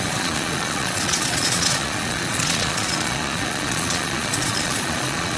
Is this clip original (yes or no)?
no